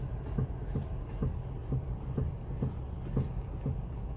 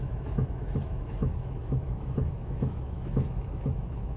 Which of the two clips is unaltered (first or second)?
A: first